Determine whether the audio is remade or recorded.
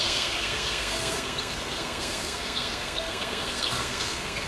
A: remade